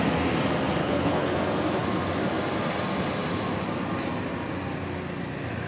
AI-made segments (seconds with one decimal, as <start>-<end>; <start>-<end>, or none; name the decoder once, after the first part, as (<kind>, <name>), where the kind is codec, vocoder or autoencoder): 0.8-1.3 (codec, HILCodec)